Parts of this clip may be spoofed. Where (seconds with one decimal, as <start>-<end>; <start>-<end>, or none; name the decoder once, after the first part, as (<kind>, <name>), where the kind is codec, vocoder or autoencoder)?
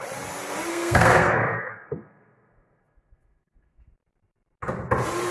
0.7-3.9 (codec, SNAC)